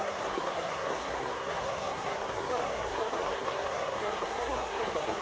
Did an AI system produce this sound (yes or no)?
yes